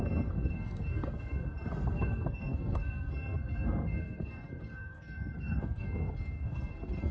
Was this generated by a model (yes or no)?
yes